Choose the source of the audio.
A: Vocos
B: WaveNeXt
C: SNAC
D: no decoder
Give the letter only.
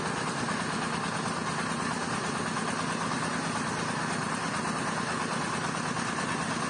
D